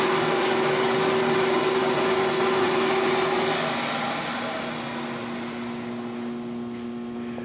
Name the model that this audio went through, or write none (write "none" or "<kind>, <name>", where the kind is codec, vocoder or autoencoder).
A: none